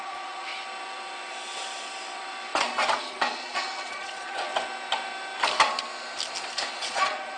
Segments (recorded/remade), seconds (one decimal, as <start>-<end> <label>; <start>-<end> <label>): 0.0-0.5 remade; 0.5-3.0 recorded; 3.0-4.5 remade; 4.5-6.7 recorded; 6.7-7.4 remade